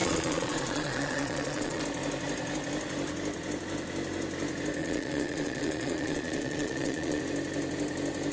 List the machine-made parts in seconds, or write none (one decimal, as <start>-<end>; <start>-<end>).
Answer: 0.0-1.8; 4.8-7.2